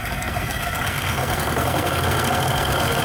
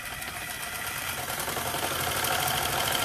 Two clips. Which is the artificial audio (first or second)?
first